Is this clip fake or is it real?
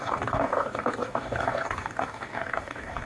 fake